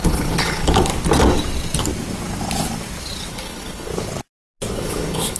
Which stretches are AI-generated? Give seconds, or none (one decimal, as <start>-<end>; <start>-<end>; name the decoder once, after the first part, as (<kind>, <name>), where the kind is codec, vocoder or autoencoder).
0.0-0.9 (codec, HILCodec); 3.3-3.9; 4.7-5.4

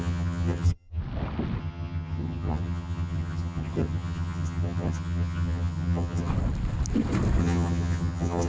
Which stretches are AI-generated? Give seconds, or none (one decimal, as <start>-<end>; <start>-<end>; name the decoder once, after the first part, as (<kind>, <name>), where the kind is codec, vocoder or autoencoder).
0.0-1.0 (vocoder, HiFi-GAN); 1.6-6.3; 7.4-8.5

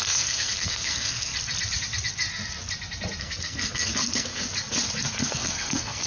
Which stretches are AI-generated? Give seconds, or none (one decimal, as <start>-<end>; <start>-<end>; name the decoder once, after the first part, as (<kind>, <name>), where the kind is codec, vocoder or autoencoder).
0.0-1.3 (codec, SNAC); 3.2-4.5; 5.2-6.1

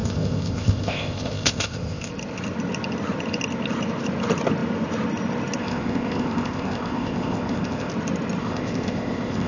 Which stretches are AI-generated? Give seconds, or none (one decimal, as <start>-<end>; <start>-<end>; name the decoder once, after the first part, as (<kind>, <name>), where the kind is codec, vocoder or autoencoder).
0.0-2.1 (codec, ZipCodec); 5.6-7.9; 8.4-9.5

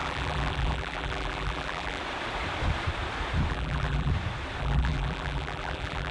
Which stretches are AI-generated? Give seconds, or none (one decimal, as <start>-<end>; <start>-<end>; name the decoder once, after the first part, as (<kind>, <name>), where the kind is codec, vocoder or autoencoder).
0.0-2.0 (vocoder, BigVGAN v2); 3.5-4.1; 4.6-6.1

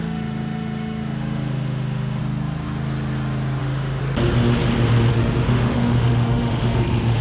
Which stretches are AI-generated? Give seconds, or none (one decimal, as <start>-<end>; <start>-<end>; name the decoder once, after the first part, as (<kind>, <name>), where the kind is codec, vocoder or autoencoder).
0.0-2.2 (autoencoder, DAC-VAE); 3.6-4.0; 5.1-7.2

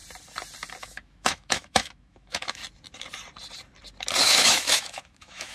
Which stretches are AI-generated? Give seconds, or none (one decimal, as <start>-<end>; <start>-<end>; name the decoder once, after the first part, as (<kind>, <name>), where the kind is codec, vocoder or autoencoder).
0.8-2.6 (autoencoder, DAC-VAE); 4.2-5.5